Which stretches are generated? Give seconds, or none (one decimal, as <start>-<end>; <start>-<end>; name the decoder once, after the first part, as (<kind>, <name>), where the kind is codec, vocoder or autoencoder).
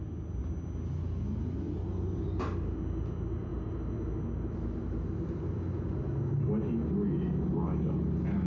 none